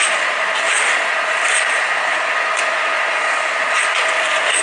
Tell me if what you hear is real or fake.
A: real